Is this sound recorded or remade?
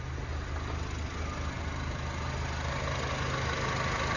recorded